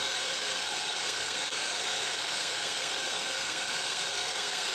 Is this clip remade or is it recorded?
remade